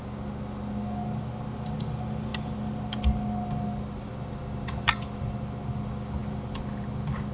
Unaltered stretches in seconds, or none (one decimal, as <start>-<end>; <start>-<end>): 0.0-7.3